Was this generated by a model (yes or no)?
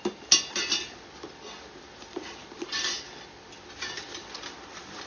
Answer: no